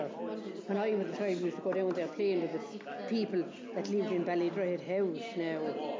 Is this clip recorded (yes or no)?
yes